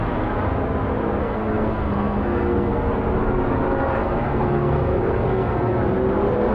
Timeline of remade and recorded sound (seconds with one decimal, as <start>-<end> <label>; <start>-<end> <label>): 0.0-1.2 recorded; 1.2-2.9 remade; 2.9-4.0 recorded; 4.0-5.8 remade; 5.8-6.5 recorded